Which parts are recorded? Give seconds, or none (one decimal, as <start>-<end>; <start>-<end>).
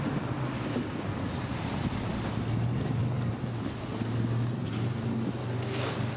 0.0-6.2